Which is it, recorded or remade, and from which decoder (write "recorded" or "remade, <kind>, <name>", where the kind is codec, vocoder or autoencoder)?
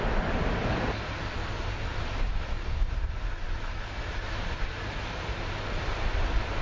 recorded